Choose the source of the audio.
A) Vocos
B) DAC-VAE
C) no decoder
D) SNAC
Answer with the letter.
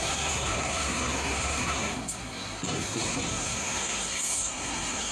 D